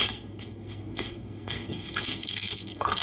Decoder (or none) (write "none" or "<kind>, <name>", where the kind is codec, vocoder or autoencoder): codec, SNAC